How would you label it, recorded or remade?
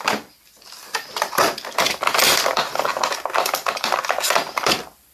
remade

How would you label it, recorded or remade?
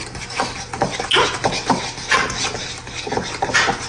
recorded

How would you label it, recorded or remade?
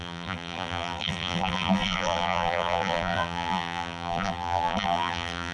remade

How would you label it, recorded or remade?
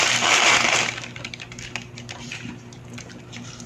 remade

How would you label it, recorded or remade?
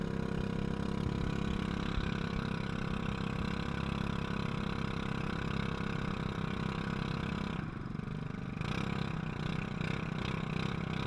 recorded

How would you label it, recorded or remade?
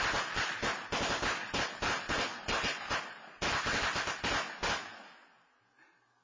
recorded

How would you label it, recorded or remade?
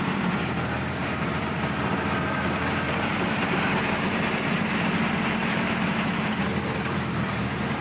remade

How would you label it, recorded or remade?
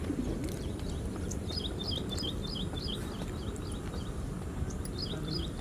remade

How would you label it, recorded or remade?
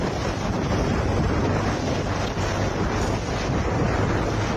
recorded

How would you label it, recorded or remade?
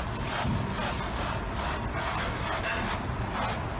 recorded